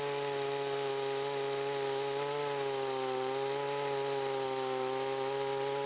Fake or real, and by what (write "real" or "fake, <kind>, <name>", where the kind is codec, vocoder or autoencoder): real